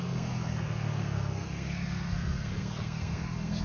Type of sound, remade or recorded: remade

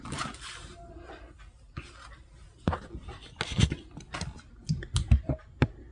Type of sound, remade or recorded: recorded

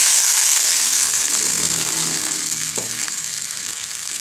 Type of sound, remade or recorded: remade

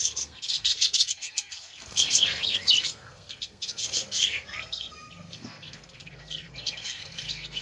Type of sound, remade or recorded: remade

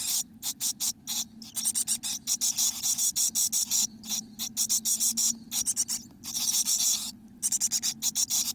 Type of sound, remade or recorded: recorded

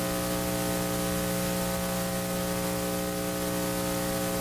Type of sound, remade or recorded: recorded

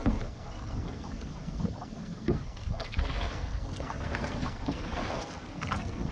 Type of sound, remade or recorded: remade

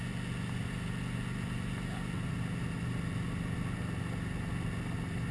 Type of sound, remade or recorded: recorded